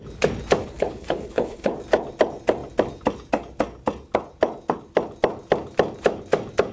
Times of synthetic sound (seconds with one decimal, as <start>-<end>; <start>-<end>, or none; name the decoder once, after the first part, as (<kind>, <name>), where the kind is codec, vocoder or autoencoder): 0.6-1.7 (codec, HILCodec)